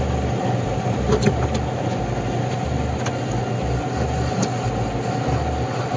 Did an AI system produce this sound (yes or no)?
no